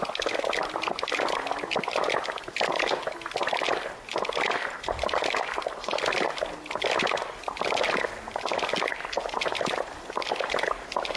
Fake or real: real